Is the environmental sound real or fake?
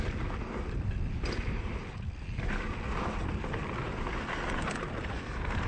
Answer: real